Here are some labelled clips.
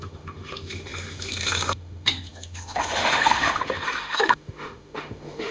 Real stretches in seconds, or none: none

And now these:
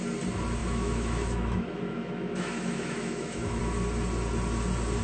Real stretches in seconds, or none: 0.0-0.6; 3.6-5.0